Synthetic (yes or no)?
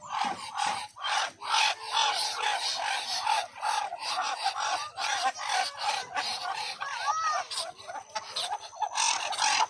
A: no